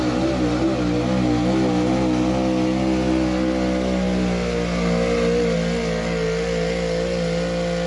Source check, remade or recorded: recorded